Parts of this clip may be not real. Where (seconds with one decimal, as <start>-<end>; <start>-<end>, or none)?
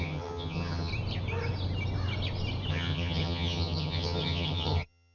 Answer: 0.0-0.9; 2.7-5.1